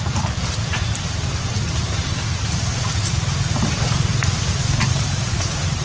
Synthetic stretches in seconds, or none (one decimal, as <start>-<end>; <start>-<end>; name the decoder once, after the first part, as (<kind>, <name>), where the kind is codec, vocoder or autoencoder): 0.0-4.1 (vocoder, BigVGAN v2); 4.9-5.8